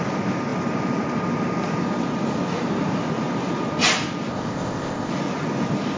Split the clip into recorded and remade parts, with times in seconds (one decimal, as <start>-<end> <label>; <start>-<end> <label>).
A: 0.0-4.3 recorded; 4.3-5.1 remade; 5.1-6.0 recorded